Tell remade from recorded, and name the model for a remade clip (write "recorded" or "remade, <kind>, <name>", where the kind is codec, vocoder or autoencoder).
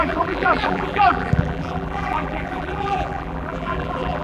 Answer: remade, vocoder, BigVGAN v2